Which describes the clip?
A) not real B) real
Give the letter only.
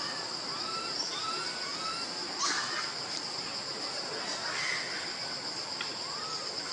B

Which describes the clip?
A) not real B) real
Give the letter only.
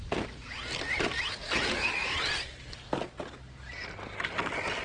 B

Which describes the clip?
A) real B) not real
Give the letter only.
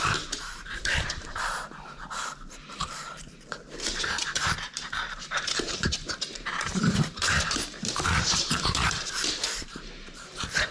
B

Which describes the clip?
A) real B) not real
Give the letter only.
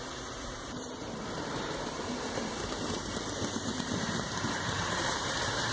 B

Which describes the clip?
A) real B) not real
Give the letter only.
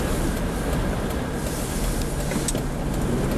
A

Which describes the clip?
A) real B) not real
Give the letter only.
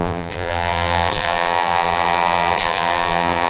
B